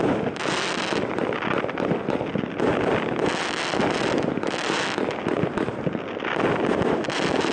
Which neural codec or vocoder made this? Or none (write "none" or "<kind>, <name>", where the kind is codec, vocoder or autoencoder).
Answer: none